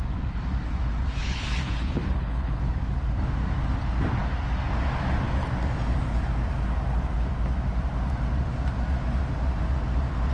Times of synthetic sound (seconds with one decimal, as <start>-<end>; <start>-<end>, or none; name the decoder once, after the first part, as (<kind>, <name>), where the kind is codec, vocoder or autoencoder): 1.2-2.6 (codec, HILCodec)